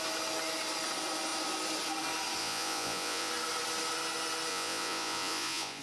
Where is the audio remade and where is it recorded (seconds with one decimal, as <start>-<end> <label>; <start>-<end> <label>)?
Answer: 0.0-2.4 recorded; 2.4-3.3 remade; 3.3-4.5 recorded; 4.5-5.8 remade

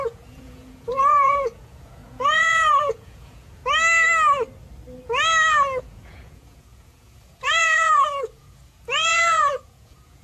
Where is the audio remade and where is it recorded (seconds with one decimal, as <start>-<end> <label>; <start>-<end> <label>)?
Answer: 0.0-3.6 remade; 3.6-5.8 recorded; 5.8-10.2 remade

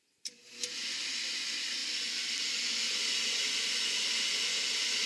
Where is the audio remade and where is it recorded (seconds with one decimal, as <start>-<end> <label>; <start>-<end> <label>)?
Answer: 0.0-5.1 recorded

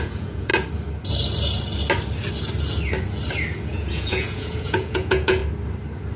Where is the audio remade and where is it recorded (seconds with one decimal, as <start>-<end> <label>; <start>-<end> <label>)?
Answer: 0.0-0.5 remade; 0.5-3.6 recorded; 3.6-5.4 remade; 5.4-6.2 recorded

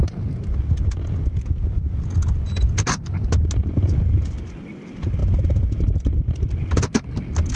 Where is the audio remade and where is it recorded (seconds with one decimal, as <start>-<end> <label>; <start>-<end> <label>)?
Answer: 0.0-7.6 recorded